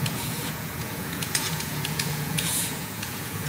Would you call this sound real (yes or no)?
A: no